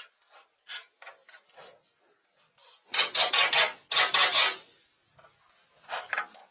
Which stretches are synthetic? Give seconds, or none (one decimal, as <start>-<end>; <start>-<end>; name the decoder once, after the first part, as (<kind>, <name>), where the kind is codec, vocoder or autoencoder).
none